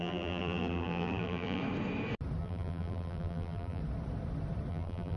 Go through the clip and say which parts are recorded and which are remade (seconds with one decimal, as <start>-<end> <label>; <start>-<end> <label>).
0.0-1.6 remade; 1.6-2.4 recorded; 2.4-3.8 remade; 3.8-4.7 recorded; 4.7-5.2 remade